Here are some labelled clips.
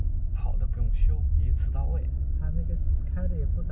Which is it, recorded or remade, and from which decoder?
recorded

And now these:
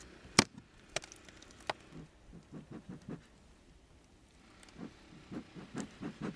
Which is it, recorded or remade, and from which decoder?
recorded